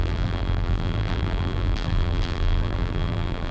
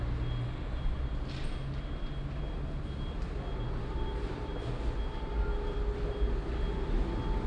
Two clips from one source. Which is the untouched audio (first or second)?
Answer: second